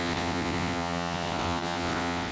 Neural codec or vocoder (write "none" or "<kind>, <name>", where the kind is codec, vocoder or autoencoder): vocoder, WaveNeXt